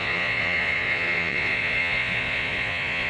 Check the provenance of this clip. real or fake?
fake